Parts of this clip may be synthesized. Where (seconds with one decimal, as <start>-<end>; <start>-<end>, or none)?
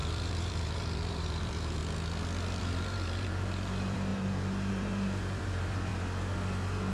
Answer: 0.0-1.8; 2.6-5.9